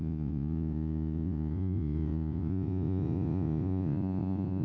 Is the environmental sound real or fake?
fake